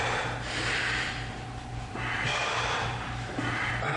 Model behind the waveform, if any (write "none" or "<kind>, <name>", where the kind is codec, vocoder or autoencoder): vocoder, BigVGAN v2